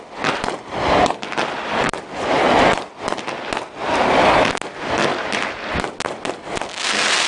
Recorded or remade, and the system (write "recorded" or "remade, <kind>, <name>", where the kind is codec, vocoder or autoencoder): recorded